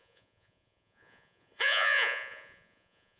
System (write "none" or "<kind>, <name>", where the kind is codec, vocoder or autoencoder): vocoder, Vocos